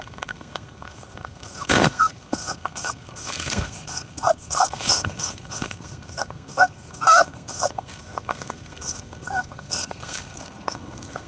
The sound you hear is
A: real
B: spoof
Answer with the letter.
B